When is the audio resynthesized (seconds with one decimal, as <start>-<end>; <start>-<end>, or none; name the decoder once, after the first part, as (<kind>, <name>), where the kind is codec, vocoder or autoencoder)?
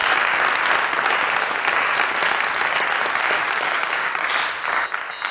3.2-4.3 (codec, DAC)